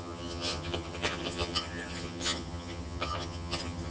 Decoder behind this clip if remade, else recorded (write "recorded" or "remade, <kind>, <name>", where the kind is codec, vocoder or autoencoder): remade, vocoder, HiFi-GAN